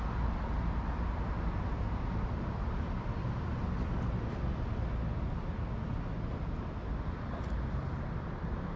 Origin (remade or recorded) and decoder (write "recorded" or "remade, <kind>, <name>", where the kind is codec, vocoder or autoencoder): recorded